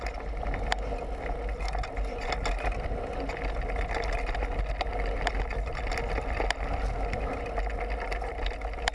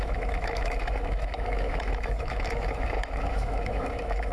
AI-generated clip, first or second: second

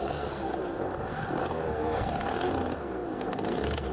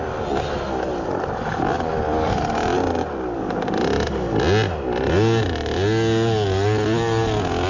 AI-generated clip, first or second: first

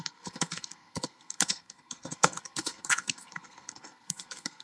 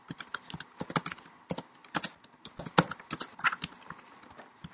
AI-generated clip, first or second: first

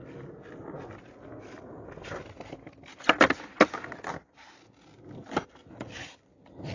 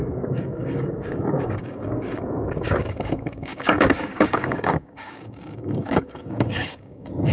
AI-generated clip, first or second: second